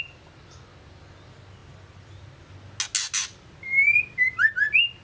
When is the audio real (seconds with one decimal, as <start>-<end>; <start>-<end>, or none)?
0.0-5.0